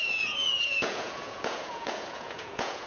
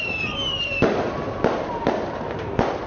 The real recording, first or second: second